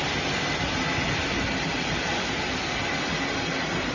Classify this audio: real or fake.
real